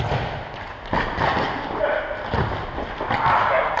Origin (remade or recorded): recorded